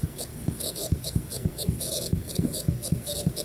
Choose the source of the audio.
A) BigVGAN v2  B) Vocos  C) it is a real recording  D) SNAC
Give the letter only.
D